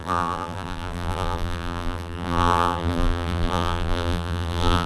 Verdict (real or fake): fake